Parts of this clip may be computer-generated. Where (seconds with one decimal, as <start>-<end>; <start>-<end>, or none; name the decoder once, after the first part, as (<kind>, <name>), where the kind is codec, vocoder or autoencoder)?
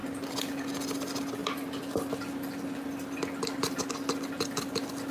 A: none